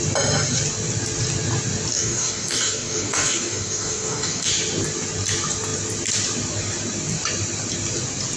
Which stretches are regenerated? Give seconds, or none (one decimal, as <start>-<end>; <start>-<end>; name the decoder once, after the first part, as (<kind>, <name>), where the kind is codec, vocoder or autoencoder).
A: 1.9-4.5 (codec, DAC)